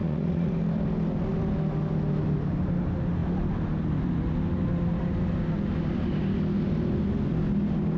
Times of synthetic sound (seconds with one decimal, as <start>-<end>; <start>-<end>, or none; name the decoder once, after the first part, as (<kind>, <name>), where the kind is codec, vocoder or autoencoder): 0.0-0.5 (vocoder, Vocos)